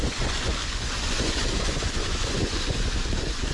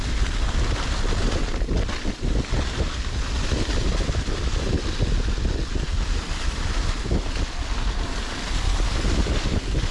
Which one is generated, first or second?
first